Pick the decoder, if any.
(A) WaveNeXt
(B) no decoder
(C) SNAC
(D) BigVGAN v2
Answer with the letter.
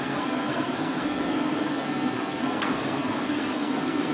C